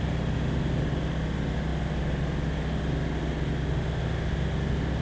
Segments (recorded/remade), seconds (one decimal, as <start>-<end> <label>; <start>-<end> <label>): 0.0-5.0 recorded